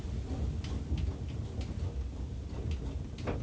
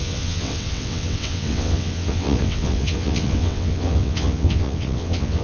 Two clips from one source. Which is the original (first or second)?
first